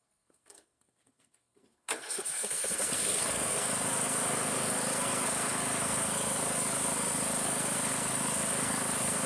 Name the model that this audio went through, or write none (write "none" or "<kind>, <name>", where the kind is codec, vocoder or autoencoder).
codec, SNAC